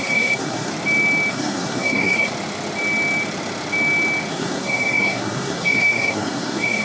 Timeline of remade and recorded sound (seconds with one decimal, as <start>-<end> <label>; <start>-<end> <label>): 0.0-0.7 remade; 0.7-1.3 recorded; 1.3-2.3 remade; 2.3-4.3 recorded; 4.3-6.8 remade